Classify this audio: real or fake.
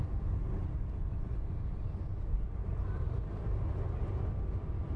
real